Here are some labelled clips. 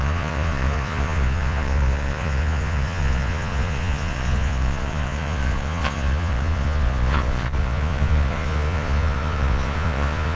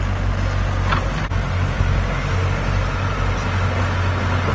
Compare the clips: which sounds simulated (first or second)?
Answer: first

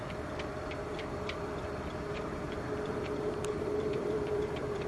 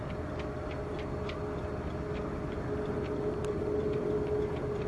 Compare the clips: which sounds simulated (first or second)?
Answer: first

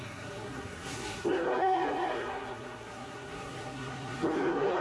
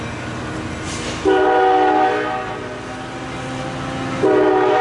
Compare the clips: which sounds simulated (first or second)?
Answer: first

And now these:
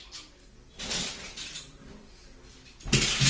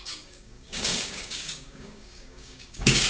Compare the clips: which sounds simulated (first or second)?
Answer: second